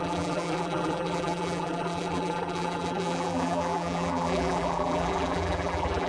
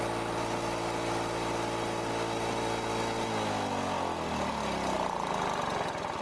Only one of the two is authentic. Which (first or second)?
second